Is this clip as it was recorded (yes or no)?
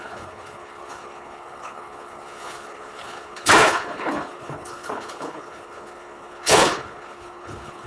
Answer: no